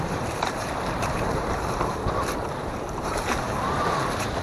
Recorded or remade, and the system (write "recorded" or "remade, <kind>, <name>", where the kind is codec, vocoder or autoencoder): remade, vocoder, BigVGAN v2